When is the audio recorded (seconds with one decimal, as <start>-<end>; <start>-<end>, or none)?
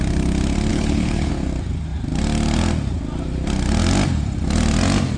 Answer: 0.0-0.7; 1.3-5.2